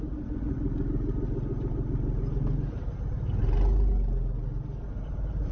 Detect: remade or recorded recorded